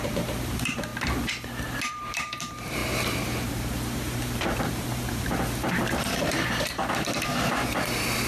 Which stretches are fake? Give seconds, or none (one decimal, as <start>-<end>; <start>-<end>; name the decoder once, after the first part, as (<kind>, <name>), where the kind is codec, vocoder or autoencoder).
0.0-0.9 (vocoder, BigVGAN v2); 1.9-8.3